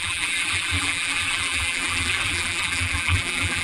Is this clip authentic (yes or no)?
no